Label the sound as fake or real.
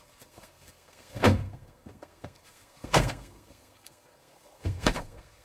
fake